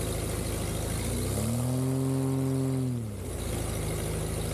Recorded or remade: recorded